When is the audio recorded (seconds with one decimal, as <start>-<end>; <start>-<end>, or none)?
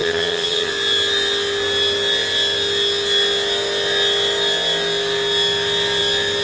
0.7-6.4